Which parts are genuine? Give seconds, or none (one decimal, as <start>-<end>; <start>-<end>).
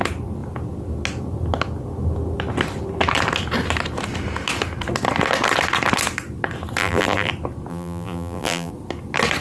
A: 0.0-6.8; 7.3-7.7; 8.7-9.4